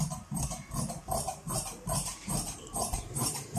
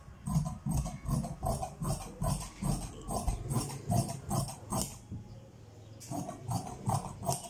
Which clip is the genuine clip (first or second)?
second